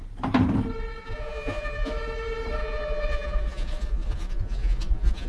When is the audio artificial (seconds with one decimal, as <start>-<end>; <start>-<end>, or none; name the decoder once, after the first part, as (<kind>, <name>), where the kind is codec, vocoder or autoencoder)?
1.0-1.9 (vocoder, Vocos); 2.6-5.3